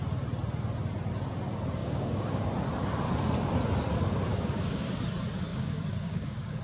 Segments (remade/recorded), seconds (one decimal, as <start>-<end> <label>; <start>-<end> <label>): 0.0-1.8 recorded; 1.8-2.4 remade; 2.4-4.3 recorded; 4.3-4.9 remade; 4.9-5.5 recorded; 5.5-6.6 remade